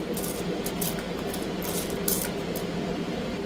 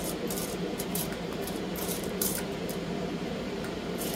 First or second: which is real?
first